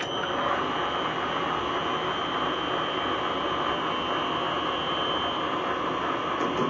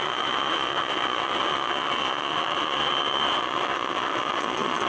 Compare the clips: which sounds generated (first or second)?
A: second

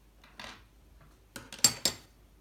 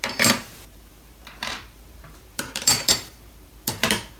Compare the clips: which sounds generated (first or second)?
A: second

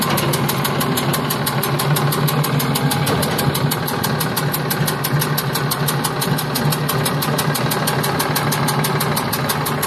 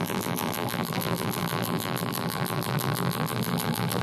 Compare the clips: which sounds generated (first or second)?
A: second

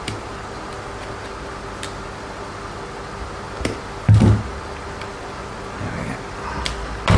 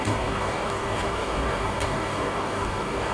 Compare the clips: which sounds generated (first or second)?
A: second